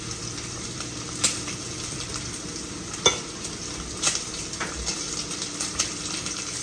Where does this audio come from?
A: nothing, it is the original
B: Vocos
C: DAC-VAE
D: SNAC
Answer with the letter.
A